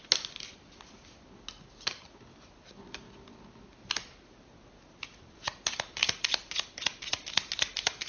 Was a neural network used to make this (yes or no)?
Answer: no